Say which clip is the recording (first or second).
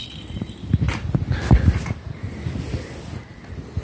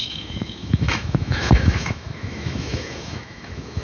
first